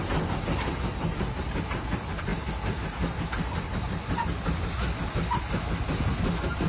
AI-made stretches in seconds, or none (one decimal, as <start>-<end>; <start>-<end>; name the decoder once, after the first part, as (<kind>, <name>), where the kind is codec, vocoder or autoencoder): none